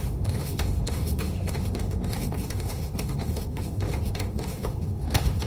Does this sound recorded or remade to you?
remade